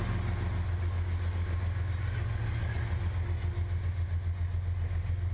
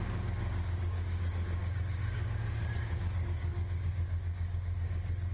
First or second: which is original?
first